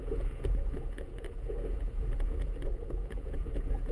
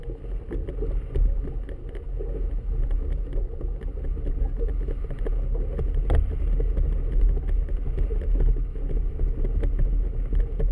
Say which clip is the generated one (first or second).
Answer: first